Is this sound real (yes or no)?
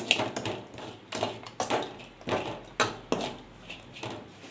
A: yes